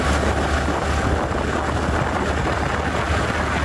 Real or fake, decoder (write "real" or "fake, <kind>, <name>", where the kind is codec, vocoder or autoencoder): real